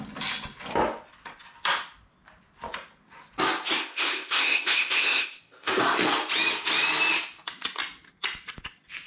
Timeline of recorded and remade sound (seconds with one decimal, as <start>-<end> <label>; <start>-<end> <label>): 0.0-3.8 recorded; 3.8-5.8 remade; 5.8-9.1 recorded